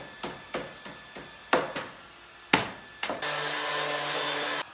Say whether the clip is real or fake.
real